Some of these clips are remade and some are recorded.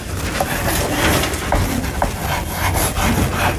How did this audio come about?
recorded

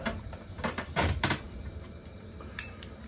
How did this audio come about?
remade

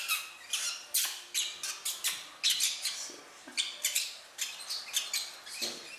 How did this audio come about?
recorded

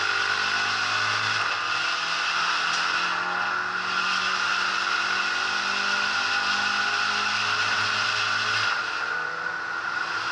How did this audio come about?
recorded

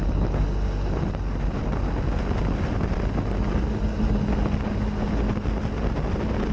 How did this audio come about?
recorded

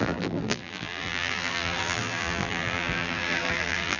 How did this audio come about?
remade